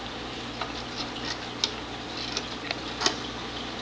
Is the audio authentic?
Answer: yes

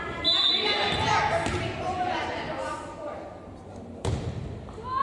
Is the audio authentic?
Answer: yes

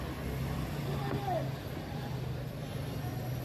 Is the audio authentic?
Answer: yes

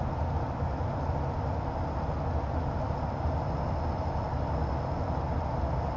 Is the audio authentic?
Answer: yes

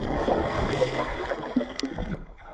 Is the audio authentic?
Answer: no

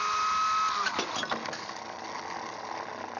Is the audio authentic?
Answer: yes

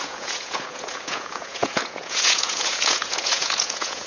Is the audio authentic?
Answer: no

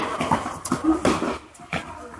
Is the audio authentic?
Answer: yes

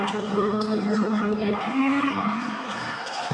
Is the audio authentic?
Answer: no